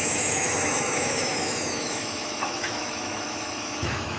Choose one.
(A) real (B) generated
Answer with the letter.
B